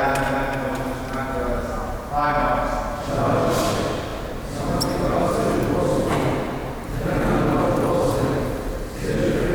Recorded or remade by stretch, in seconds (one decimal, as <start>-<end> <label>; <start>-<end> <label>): 0.0-6.6 recorded; 6.6-9.1 remade; 9.1-9.5 recorded